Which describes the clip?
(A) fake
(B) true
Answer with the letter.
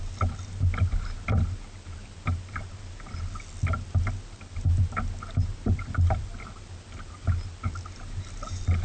B